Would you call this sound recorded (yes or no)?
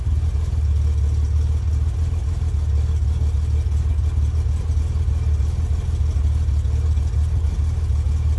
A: yes